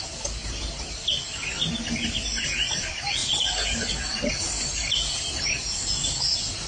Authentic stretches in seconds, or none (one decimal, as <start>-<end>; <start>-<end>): 0.0-6.7